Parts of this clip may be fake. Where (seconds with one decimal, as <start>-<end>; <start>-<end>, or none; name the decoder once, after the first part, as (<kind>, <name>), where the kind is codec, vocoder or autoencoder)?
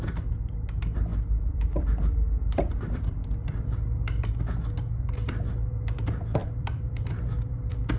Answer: 1.1-4.3 (vocoder, BigVGAN v2); 6.4-7.1